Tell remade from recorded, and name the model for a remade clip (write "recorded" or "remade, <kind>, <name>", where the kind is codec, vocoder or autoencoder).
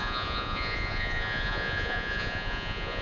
remade, vocoder, Vocos